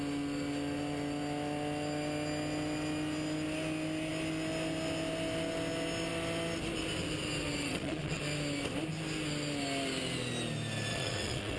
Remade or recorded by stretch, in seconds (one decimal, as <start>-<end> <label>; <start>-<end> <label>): 0.0-7.6 recorded; 7.6-8.2 remade; 8.2-10.9 recorded; 10.9-11.6 remade